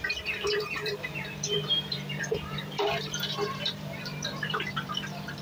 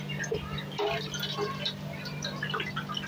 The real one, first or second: second